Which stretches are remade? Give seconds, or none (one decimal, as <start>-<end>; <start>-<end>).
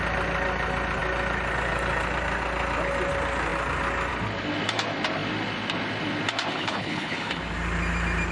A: 6.5-7.4